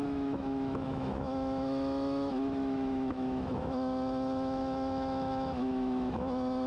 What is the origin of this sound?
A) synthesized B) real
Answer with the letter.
A